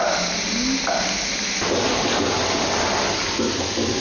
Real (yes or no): yes